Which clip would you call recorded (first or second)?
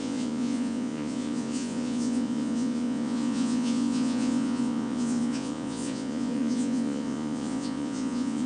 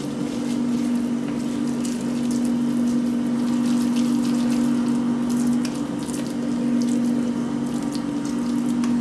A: second